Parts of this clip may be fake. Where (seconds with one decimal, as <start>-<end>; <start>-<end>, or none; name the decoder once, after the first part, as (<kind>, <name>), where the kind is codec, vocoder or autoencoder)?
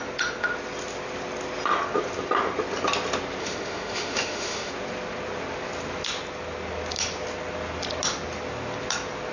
3.4-4.7 (autoencoder, DAC-VAE)